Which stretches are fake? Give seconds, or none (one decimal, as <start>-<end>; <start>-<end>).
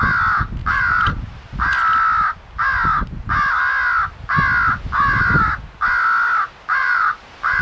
0.6-1.5; 6.8-7.6